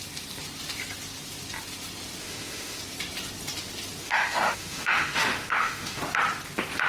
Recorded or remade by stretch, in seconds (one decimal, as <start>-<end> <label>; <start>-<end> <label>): 0.0-2.2 recorded; 2.2-2.8 remade; 2.8-4.0 recorded; 4.0-6.0 remade; 6.0-6.9 recorded